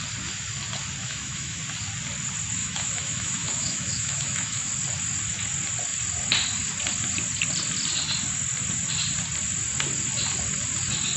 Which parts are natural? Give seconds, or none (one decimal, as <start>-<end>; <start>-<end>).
0.0-1.0; 1.6-2.6; 4.7-11.2